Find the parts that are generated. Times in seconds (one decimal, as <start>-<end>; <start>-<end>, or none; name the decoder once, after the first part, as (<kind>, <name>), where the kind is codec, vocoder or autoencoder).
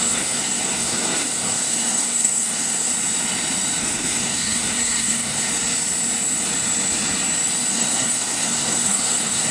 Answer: 0.0-2.9 (codec, SNAC); 3.8-5.5; 7.7-9.5